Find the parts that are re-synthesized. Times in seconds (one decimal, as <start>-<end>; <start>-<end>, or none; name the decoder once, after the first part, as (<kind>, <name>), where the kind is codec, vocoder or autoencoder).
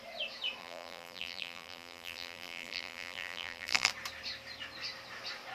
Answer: 0.6-3.9 (vocoder, BigVGAN v2)